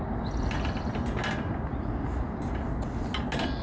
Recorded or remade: recorded